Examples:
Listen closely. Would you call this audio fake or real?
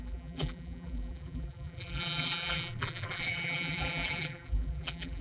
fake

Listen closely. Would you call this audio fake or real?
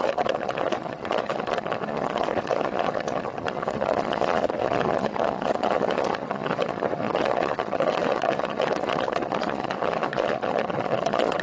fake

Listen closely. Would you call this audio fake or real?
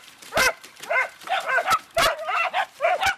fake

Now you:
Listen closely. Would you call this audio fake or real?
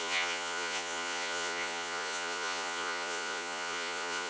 fake